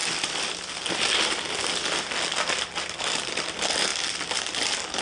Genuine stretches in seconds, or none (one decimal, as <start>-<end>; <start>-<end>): none